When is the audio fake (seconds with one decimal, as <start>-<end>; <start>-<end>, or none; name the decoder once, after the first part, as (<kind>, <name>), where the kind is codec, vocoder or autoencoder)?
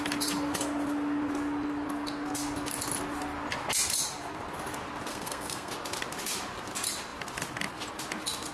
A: 5.1-5.7 (codec, SNAC)